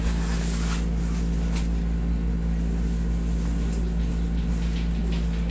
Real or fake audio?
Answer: real